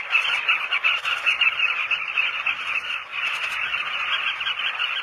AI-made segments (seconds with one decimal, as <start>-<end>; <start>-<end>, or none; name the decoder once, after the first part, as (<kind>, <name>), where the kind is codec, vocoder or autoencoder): 0.0-3.1 (vocoder, BigVGAN v2); 4.2-5.0